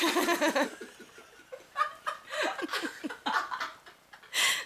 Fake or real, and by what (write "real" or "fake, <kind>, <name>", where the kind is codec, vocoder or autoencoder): real